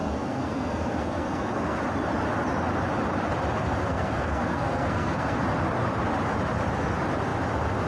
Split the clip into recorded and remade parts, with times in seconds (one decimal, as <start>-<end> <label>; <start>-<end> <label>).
0.0-1.8 remade; 1.8-3.8 recorded; 3.8-5.4 remade; 5.4-7.9 recorded